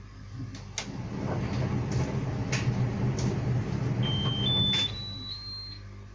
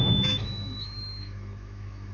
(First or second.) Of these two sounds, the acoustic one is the first